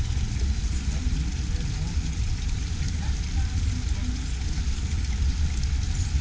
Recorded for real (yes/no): yes